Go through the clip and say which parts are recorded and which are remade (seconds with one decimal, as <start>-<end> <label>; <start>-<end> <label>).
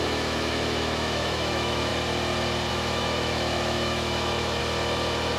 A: 0.0-1.9 remade; 1.9-2.7 recorded; 2.7-4.6 remade; 4.6-5.4 recorded